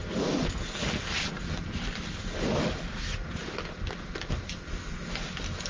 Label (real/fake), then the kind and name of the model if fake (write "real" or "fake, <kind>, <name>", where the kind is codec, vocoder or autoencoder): real